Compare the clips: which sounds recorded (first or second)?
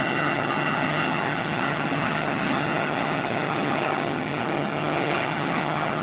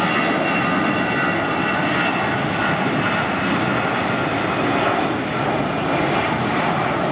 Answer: second